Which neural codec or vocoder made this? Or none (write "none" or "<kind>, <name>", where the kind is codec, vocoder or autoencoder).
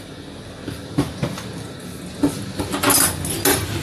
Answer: none